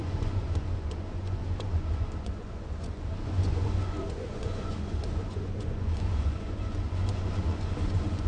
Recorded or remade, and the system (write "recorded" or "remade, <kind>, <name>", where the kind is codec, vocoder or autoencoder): remade, vocoder, Vocos